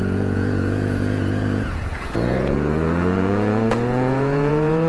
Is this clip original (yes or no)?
no